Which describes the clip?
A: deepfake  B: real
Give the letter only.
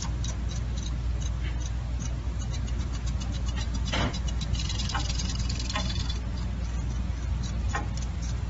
B